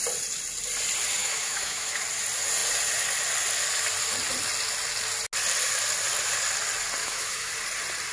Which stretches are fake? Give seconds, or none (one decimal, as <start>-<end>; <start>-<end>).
1.2-2.0; 7.0-7.5